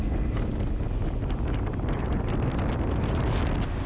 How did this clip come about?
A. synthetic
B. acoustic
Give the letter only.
B